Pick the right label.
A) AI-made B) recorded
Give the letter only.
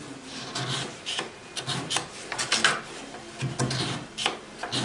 B